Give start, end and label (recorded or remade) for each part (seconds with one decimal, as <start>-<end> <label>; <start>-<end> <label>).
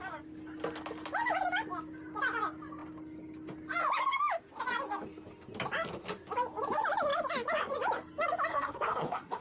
0.0-8.5 recorded; 8.5-9.4 remade